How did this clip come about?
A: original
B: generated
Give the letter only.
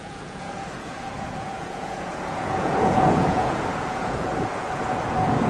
B